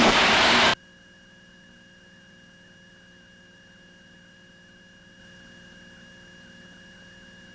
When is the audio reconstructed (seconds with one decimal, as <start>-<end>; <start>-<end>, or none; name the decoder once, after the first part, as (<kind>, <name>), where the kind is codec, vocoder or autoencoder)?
none